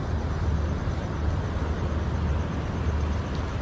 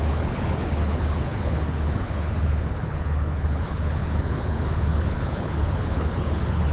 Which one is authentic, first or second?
first